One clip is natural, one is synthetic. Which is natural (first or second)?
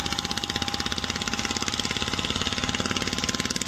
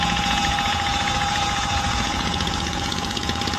first